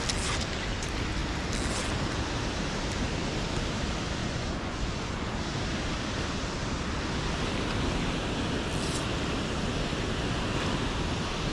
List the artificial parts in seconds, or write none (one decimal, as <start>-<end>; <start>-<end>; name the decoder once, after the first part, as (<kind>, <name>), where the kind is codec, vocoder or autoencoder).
4.2-5.3 (vocoder, Vocos)